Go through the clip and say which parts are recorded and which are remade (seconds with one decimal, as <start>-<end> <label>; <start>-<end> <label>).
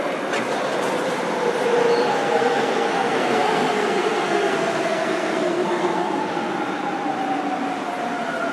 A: 0.0-2.1 recorded; 2.1-6.5 remade; 6.5-8.5 recorded